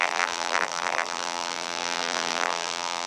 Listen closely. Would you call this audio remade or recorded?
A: remade